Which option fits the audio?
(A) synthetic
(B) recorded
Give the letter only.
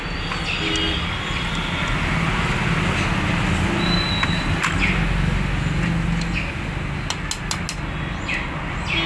B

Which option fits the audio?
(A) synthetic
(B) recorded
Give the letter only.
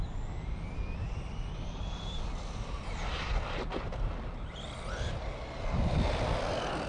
B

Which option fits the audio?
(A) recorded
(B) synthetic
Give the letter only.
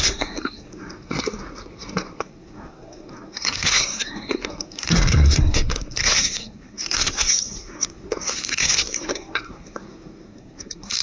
B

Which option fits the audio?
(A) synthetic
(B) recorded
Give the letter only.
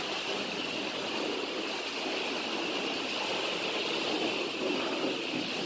B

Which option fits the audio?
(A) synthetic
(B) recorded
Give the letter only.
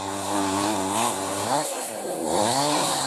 A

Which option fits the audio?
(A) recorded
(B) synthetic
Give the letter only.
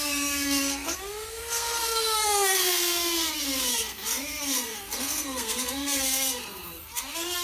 B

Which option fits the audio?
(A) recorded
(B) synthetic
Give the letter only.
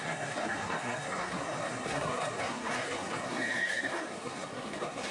B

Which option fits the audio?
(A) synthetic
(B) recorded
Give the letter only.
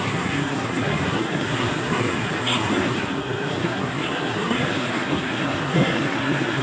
A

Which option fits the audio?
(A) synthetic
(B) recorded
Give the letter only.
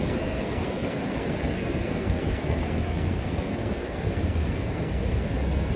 A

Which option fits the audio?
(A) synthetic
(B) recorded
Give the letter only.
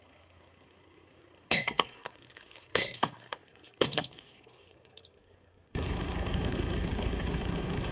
A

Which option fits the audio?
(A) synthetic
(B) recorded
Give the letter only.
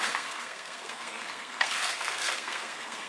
A